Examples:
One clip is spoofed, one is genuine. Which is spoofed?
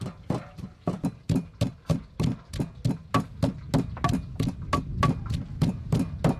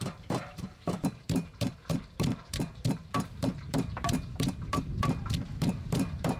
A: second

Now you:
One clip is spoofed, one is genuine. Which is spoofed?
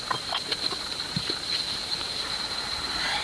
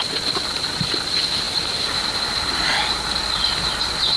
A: first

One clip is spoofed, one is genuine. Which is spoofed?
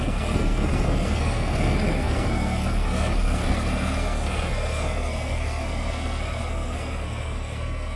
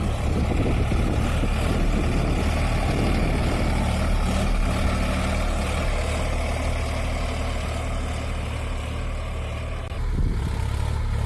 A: first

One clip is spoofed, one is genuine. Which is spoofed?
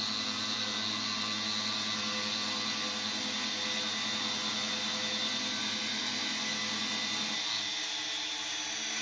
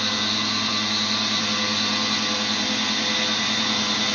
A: second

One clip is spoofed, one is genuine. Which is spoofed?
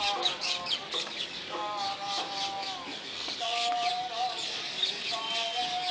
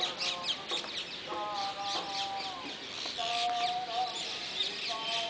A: first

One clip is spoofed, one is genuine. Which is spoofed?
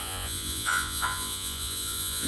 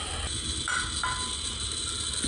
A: first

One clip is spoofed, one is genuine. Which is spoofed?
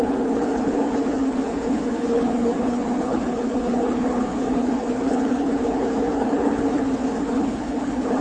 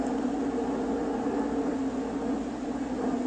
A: first